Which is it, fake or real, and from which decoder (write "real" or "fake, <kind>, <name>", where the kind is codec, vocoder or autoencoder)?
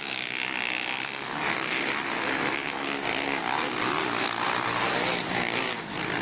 real